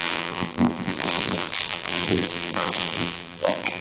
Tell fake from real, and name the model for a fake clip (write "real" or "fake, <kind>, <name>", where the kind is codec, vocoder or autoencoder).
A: fake, vocoder, BigVGAN v2